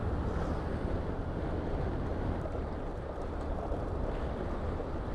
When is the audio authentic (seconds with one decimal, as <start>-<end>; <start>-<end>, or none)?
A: 0.0-2.1